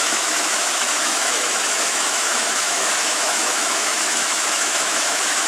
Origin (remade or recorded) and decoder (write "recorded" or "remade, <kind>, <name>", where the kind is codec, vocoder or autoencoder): remade, autoencoder, DAC-VAE